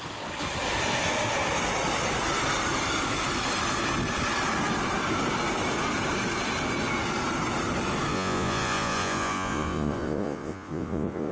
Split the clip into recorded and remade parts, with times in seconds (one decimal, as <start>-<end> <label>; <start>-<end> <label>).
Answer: 0.0-8.1 recorded; 8.1-11.3 remade